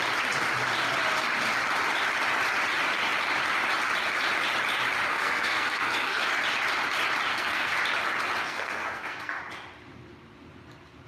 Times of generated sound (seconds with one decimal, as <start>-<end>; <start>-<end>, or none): 5.1-6.3; 7.3-7.8; 8.4-9.4